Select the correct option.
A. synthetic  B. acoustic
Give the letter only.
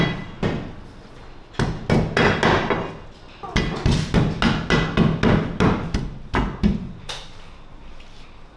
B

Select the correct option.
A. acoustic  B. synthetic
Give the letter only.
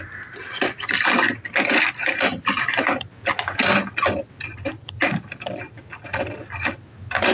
A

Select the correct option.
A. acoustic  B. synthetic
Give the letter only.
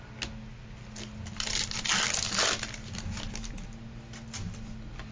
A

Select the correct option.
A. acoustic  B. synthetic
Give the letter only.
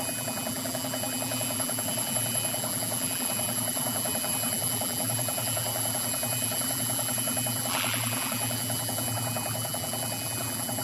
B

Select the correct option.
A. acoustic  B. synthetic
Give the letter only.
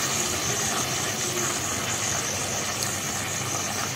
A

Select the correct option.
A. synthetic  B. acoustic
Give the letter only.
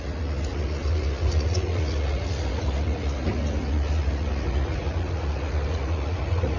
A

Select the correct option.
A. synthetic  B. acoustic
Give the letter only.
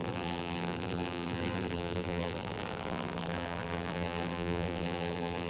A